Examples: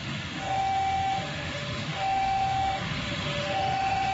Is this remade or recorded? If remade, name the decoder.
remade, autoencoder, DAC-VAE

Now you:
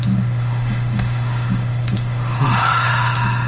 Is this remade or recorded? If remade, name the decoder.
remade, autoencoder, DAC-VAE